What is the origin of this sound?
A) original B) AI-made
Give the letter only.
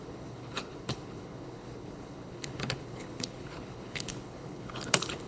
B